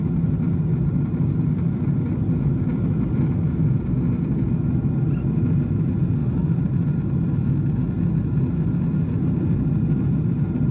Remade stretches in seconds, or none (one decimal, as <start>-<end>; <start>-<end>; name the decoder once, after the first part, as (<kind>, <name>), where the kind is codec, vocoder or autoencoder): none